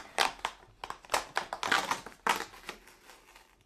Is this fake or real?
real